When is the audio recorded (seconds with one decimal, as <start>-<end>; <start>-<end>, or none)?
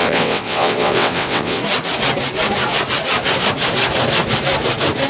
1.6-5.1